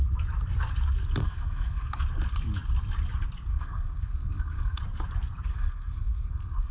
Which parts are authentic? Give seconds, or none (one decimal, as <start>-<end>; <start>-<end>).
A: 0.0-1.2; 2.0-3.5; 4.8-5.5